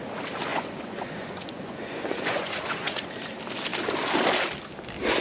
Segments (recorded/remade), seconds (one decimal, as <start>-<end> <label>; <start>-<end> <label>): 0.0-0.5 recorded; 0.5-3.1 remade; 3.1-5.2 recorded